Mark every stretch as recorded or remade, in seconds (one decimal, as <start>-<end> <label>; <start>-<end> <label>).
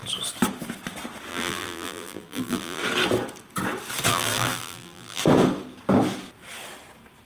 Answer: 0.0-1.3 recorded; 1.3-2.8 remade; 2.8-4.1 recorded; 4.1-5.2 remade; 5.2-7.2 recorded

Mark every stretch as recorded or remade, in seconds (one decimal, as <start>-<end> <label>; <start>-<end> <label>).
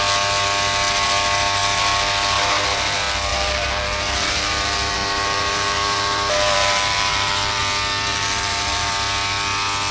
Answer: 0.0-3.3 recorded; 3.3-7.6 remade; 7.6-8.1 recorded; 8.1-8.9 remade; 8.9-9.9 recorded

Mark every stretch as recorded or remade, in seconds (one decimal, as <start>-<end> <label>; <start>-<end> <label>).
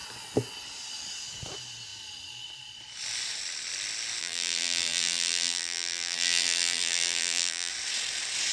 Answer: 0.0-4.2 recorded; 4.2-7.7 remade; 7.7-8.5 recorded